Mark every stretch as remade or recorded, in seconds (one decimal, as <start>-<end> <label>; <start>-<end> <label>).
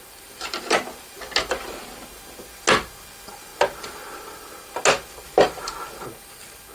0.0-6.7 recorded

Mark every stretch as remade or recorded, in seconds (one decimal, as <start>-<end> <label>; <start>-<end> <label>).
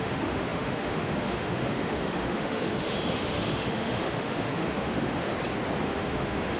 0.0-5.3 remade; 5.3-5.8 recorded; 5.8-6.6 remade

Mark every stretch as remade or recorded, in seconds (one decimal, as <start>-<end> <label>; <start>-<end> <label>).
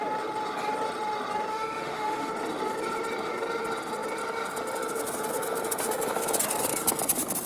0.0-1.5 recorded; 1.5-2.3 remade; 2.3-7.5 recorded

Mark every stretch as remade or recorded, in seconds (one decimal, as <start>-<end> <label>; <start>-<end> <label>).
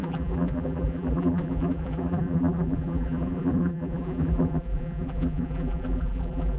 0.0-6.6 remade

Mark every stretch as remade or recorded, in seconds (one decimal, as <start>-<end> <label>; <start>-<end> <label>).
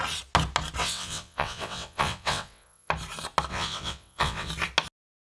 0.0-0.8 recorded; 0.8-2.9 remade; 2.9-3.5 recorded; 3.5-4.5 remade; 4.5-5.4 recorded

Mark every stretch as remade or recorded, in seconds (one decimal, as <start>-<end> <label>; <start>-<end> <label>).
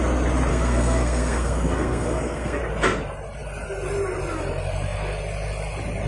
0.0-0.5 recorded; 0.5-2.6 remade; 2.6-6.1 recorded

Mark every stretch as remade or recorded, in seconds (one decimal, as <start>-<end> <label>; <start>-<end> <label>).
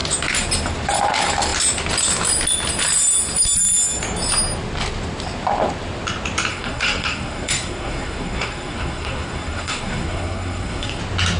0.0-6.5 recorded; 6.5-11.0 remade; 11.0-11.4 recorded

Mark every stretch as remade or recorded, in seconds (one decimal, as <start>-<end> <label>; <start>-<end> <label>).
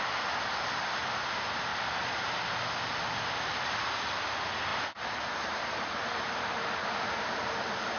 0.0-1.7 recorded; 1.7-2.4 remade; 2.4-4.7 recorded; 4.7-6.9 remade; 6.9-8.0 recorded